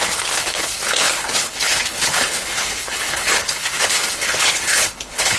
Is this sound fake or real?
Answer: fake